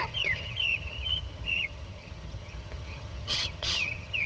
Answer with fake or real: fake